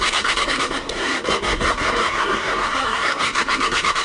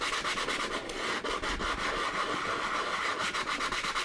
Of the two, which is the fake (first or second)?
first